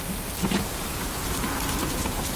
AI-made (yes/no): yes